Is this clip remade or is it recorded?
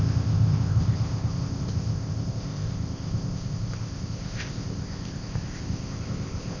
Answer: remade